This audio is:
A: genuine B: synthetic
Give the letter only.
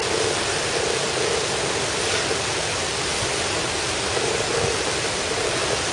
A